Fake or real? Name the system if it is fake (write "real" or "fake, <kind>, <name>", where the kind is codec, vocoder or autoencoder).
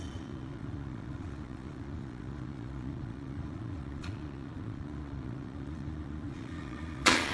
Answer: fake, vocoder, Vocos